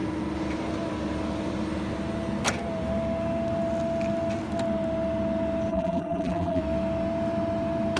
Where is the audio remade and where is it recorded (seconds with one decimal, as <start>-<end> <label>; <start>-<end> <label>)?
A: 0.0-5.7 recorded; 5.7-6.6 remade; 6.6-8.0 recorded